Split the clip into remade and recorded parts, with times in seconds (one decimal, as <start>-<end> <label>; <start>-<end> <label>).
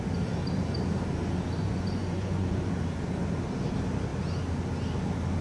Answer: 0.0-1.6 recorded; 1.6-2.7 remade; 2.7-5.4 recorded